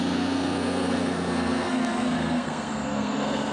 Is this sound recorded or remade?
remade